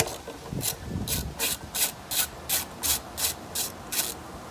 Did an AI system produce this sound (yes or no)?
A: no